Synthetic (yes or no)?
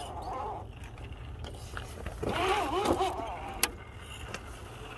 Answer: no